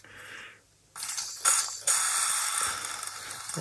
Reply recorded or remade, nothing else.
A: recorded